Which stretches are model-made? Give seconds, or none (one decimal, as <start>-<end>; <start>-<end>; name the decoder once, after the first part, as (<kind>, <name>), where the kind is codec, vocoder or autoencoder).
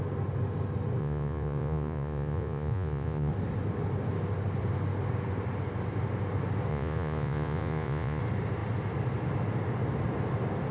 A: 1.0-3.3 (vocoder, Vocos); 6.7-8.2